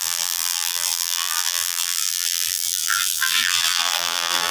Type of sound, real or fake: fake